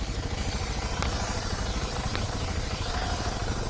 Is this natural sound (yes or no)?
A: yes